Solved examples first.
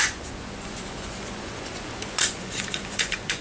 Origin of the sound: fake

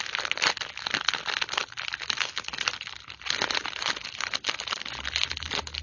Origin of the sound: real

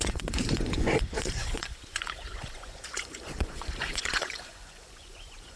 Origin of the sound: fake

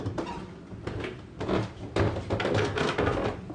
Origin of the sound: real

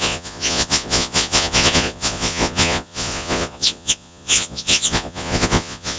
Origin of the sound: fake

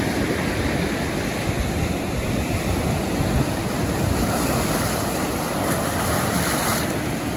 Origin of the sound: real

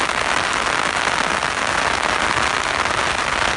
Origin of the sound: real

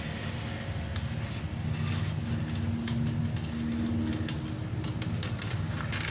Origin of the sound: real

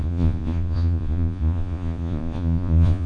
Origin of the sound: fake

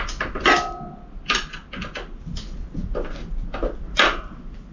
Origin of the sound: real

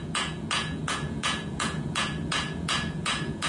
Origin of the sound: fake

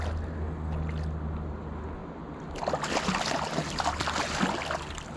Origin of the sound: real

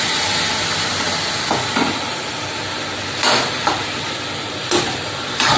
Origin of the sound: real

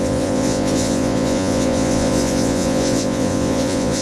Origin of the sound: fake